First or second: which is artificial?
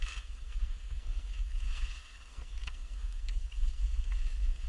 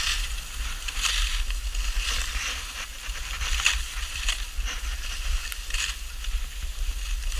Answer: first